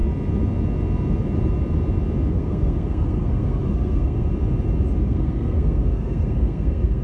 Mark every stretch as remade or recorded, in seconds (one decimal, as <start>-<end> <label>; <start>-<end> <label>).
0.0-2.3 recorded; 2.3-4.3 remade; 4.3-5.0 recorded; 5.0-7.0 remade